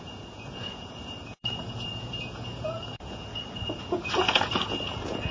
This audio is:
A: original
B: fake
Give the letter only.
B